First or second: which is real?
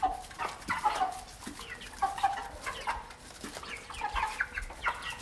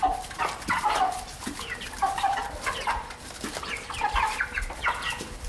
first